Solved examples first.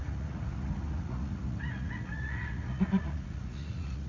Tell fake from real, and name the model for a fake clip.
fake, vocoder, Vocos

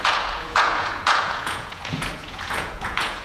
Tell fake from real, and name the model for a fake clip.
fake, vocoder, Vocos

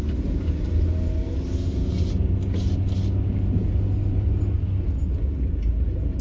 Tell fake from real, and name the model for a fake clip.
real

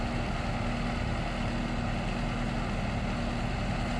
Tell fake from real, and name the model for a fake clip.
real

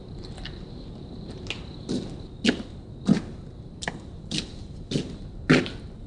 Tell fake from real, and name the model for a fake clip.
real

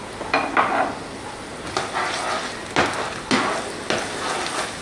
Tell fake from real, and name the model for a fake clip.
real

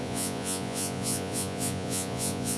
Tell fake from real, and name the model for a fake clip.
fake, vocoder, Vocos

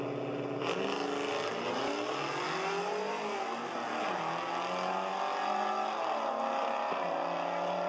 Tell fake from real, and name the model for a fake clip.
real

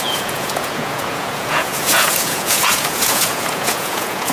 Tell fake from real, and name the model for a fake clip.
fake, vocoder, Vocos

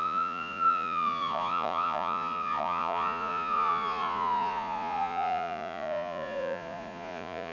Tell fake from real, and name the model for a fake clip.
fake, vocoder, Vocos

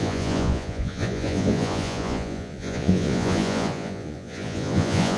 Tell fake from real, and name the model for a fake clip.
fake, vocoder, Vocos